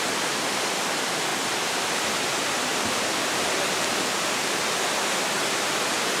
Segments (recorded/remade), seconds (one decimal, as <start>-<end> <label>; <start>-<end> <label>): 0.0-6.2 recorded